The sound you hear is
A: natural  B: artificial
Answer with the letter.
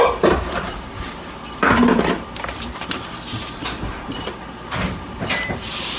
B